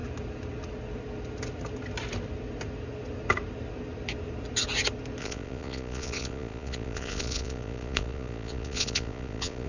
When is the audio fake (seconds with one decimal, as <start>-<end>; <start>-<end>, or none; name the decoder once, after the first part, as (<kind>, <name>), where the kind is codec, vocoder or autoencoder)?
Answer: 5.2-9.7 (vocoder, Vocos)